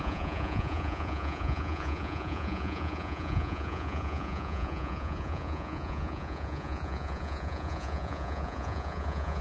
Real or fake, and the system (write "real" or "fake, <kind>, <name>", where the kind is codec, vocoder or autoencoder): fake, vocoder, Vocos